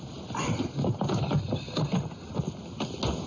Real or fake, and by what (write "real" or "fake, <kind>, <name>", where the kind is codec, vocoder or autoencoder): real